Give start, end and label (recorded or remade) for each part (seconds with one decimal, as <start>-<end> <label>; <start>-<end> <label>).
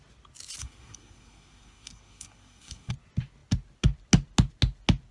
0.0-0.6 recorded; 0.6-2.9 remade; 2.9-5.1 recorded